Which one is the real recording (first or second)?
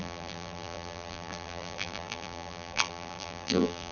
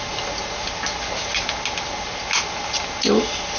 second